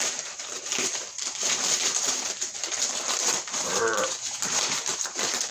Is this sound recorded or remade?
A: remade